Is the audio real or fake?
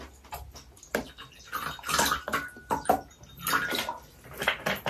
real